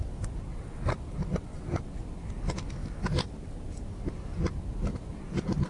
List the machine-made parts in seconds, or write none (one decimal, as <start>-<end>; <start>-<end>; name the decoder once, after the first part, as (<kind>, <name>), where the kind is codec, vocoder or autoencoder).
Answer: none